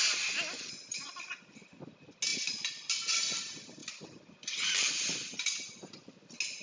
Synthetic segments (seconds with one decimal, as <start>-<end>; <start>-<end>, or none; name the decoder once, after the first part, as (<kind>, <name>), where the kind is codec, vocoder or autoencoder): none